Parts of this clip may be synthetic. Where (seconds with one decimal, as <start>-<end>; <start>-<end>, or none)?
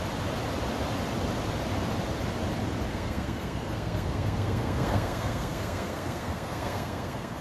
2.9-7.4